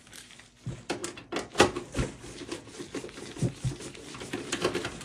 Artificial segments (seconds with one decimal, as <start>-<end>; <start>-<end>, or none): none